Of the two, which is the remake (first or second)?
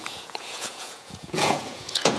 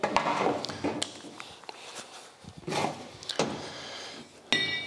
first